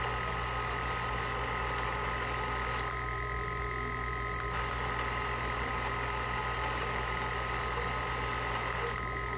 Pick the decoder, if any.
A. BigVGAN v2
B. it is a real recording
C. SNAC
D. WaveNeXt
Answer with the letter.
B